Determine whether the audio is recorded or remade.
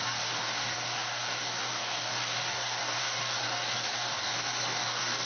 remade